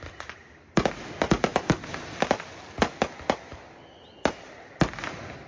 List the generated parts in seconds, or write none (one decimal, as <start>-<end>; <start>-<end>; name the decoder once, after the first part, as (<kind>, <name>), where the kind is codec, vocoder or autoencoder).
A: none